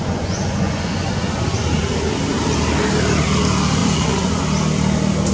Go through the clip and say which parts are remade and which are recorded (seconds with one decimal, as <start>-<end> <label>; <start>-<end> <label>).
0.0-1.3 remade; 1.3-3.8 recorded; 3.8-4.4 remade; 4.4-5.3 recorded